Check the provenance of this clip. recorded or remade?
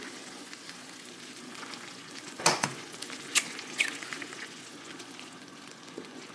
remade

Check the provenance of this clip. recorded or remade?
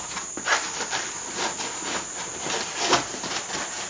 recorded